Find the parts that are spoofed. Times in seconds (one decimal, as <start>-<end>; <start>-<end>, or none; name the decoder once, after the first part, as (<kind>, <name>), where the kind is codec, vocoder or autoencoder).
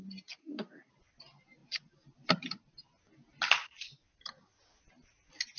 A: 0.4-0.9 (codec, SNAC)